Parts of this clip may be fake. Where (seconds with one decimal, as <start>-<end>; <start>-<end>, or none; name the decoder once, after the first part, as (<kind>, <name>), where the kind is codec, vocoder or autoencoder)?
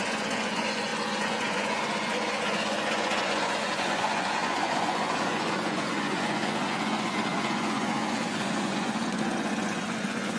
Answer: 0.0-10.4 (vocoder, Vocos)